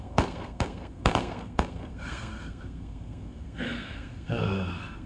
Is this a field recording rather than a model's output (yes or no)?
no